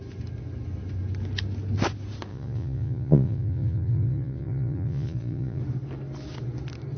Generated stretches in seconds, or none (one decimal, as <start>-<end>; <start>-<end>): 2.3-5.6